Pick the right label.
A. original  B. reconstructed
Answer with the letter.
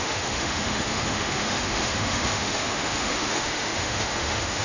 B